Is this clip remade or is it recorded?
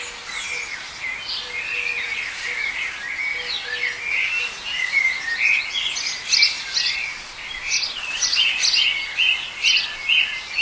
recorded